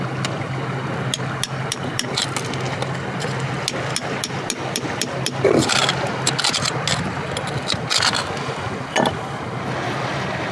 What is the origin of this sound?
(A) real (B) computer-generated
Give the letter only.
A